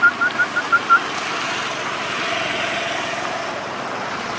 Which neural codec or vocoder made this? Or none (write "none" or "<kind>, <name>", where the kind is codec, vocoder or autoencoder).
none